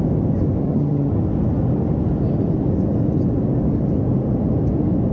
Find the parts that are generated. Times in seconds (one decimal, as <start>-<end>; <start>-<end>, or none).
0.6-1.1